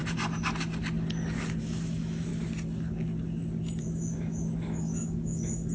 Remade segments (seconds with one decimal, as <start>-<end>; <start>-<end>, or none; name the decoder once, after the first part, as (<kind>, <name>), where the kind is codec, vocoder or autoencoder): 1.6-2.3 (autoencoder, DAC-VAE); 3.8-5.7

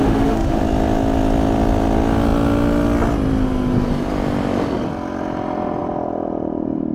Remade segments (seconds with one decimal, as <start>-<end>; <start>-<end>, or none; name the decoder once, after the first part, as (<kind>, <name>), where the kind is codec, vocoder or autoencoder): 0.0-0.6 (autoencoder, DAC-VAE)